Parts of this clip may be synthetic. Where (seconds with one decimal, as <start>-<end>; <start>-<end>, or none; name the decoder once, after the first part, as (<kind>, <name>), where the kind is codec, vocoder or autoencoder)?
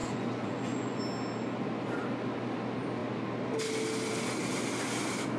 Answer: 0.0-1.0 (vocoder, Vocos)